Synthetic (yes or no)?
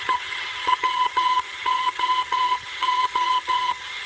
yes